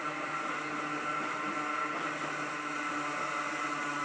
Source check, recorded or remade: recorded